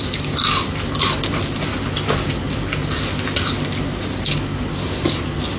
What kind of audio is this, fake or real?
real